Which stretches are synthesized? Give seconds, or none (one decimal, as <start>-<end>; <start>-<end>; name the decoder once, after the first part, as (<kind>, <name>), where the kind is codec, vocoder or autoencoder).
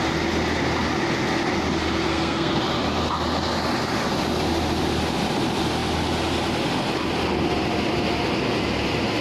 2.1-2.6 (codec, SNAC)